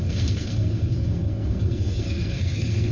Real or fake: fake